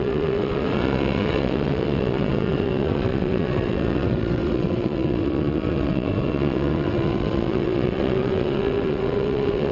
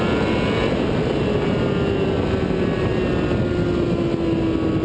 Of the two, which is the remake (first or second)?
first